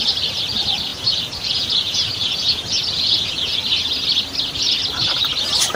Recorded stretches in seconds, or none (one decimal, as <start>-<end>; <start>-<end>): 0.0-0.9; 3.6-5.8